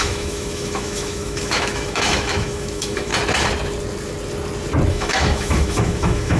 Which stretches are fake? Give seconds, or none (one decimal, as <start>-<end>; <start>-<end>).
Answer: 0.0-3.1; 4.9-6.4